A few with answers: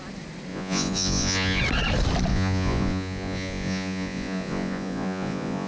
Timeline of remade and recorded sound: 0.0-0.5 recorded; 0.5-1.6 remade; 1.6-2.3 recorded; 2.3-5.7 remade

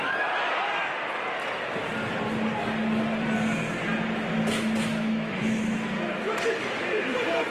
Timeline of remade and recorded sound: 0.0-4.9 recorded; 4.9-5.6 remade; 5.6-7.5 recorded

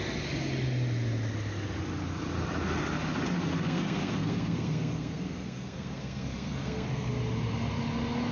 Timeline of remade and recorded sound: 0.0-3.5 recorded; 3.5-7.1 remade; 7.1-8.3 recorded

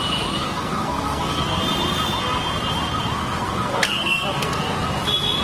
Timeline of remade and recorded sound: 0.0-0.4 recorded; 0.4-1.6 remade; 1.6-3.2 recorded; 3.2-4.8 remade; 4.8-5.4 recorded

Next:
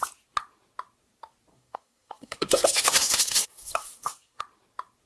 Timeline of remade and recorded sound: 0.0-1.5 recorded; 1.5-4.4 remade; 4.4-5.1 recorded

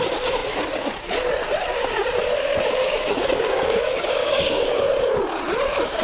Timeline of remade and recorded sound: 0.0-2.8 recorded; 2.8-3.8 remade; 3.8-4.2 recorded; 4.2-4.8 remade; 4.8-6.0 recorded

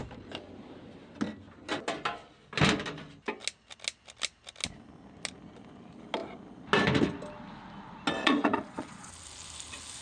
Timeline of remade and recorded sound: 0.0-8.2 recorded; 8.2-9.1 remade; 9.1-10.0 recorded

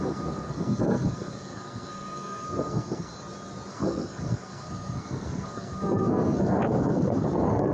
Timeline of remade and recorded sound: 0.0-3.1 remade; 3.1-3.7 recorded; 3.7-7.7 remade